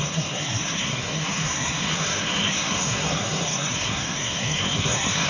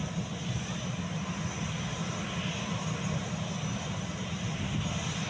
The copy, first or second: first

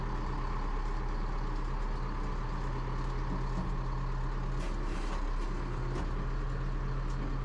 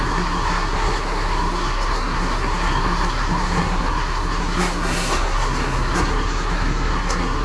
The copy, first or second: second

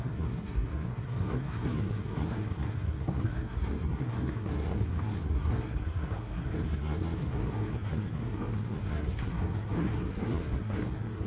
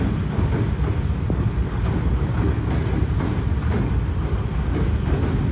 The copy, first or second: first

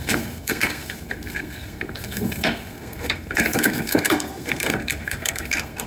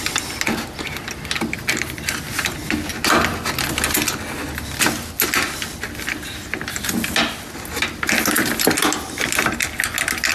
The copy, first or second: first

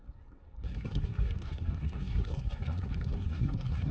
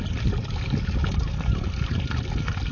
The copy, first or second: first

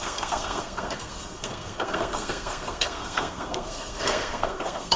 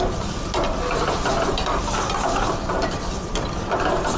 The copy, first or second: first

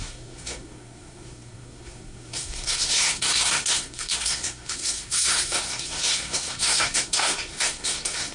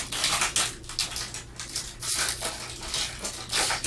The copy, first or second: first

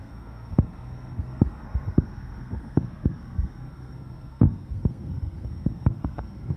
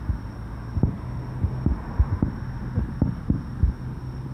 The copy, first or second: first